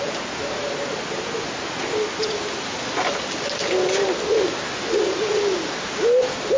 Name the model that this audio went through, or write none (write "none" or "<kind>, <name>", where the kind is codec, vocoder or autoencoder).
none